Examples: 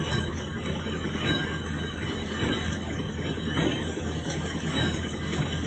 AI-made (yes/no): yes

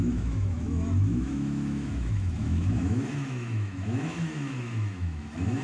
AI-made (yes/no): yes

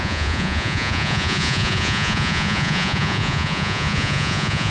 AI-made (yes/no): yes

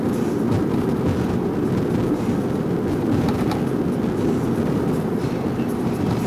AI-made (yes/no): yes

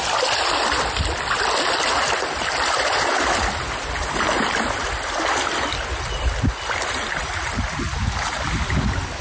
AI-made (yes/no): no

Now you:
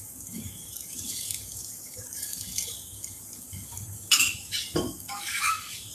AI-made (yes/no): yes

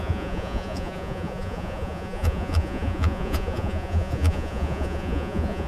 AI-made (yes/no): yes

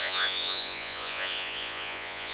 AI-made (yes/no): yes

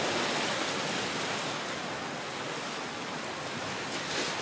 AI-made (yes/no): no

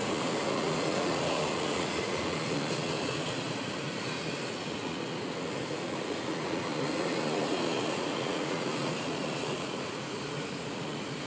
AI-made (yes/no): yes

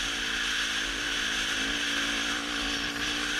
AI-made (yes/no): no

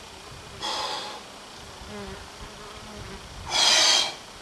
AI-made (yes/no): no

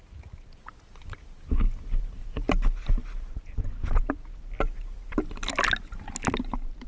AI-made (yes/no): no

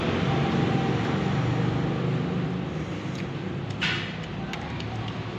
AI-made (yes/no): no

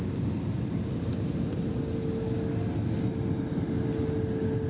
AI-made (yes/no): no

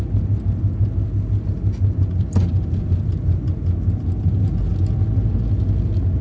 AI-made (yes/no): no